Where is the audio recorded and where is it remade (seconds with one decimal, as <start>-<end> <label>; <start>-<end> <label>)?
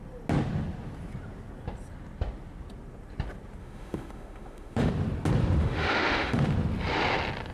0.0-3.6 recorded; 3.6-4.9 remade; 4.9-5.6 recorded; 5.6-6.4 remade; 6.4-7.5 recorded